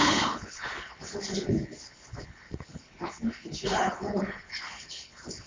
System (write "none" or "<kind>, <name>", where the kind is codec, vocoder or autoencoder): codec, HILCodec